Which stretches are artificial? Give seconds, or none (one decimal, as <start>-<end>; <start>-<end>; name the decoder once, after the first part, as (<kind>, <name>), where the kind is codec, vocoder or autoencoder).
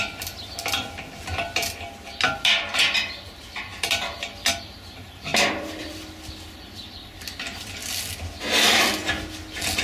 3.7-4.6 (vocoder, BigVGAN v2); 5.3-5.9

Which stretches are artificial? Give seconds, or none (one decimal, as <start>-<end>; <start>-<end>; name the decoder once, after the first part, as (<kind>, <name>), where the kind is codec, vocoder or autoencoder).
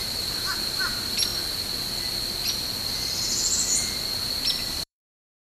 0.0-1.3 (vocoder, BigVGAN v2); 4.6-5.5